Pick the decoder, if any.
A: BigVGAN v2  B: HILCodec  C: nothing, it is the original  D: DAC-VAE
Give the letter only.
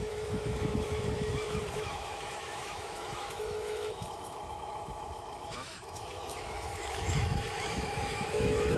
D